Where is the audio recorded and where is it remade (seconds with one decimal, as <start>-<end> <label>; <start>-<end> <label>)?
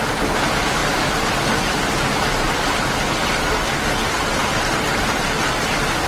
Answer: 0.0-0.8 recorded; 0.8-3.0 remade; 3.0-6.1 recorded